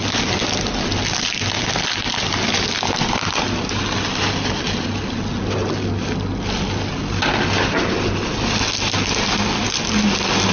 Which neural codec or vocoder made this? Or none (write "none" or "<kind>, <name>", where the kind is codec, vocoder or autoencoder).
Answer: none